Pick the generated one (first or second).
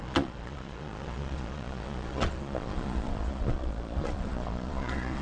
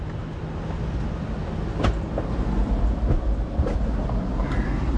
first